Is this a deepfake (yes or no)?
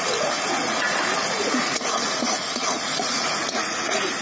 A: yes